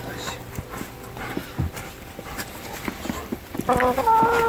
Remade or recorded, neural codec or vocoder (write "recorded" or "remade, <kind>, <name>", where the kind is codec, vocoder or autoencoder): recorded